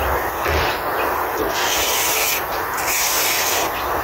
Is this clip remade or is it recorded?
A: recorded